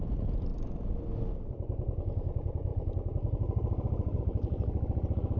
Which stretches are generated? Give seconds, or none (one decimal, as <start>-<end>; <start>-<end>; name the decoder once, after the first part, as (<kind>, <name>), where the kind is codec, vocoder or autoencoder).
none